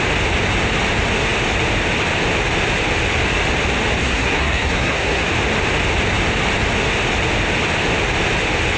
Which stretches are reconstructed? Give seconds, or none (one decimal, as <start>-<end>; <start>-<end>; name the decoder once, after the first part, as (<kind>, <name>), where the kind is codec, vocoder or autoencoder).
4.0-5.3 (codec, SNAC)